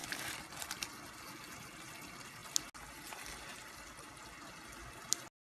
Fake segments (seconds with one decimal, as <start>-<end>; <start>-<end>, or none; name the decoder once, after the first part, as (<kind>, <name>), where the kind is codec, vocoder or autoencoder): none